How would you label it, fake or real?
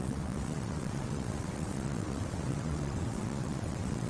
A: fake